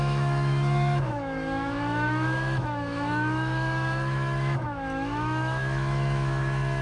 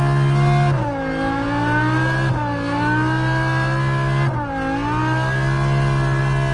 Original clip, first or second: second